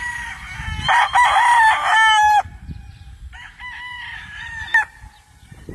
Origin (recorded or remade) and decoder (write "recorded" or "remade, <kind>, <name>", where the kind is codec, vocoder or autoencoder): recorded